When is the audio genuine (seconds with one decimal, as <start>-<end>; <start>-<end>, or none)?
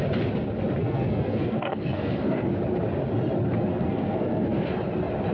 0.0-0.8; 2.5-3.7; 4.7-5.3